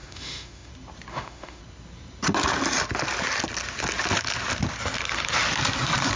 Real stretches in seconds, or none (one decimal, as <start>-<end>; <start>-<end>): 0.7-1.1; 1.6-6.2